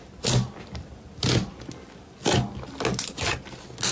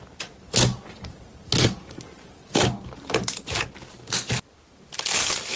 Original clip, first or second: first